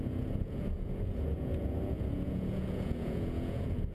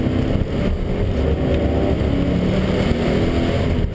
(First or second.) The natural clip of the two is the second